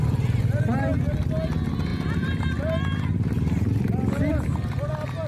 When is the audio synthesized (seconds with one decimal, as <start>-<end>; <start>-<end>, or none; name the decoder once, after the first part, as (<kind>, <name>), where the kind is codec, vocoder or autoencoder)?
none